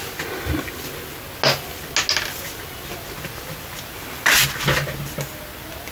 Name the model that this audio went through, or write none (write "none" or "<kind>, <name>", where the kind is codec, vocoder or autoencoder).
none